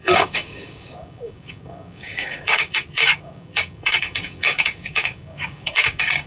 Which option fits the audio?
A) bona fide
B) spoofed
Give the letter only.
B